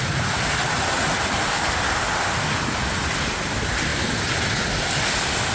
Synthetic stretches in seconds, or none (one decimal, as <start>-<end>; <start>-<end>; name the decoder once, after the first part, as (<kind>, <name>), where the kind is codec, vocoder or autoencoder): none

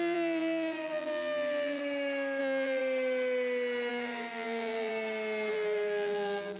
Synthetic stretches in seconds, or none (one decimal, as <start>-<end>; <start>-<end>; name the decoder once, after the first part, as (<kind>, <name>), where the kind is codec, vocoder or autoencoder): 0.0-1.8 (vocoder, BigVGAN v2); 2.4-2.8; 3.9-4.9; 5.5-6.6

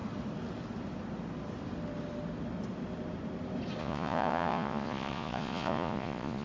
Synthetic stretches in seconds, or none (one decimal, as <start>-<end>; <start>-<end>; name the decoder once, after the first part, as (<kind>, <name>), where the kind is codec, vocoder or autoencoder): 3.8-6.4 (vocoder, Vocos)

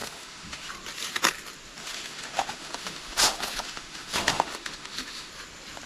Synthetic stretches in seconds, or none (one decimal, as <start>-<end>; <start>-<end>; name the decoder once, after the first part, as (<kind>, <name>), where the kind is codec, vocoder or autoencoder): 0.0-0.7 (autoencoder, DAC-VAE); 1.8-5.3

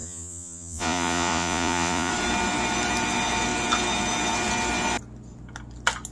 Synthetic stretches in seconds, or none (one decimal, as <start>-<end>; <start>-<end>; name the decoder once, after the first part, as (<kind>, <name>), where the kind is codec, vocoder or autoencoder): 0.0-2.1 (vocoder, Vocos)